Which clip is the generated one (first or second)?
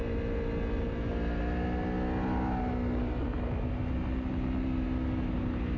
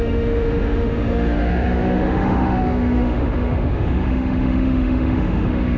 second